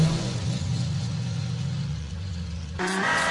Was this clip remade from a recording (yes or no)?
yes